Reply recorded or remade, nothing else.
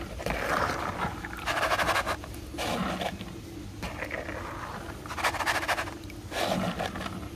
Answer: recorded